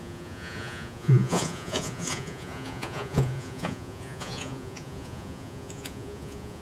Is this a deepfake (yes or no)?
yes